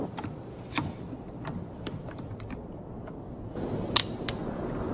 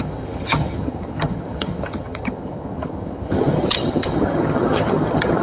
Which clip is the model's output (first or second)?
second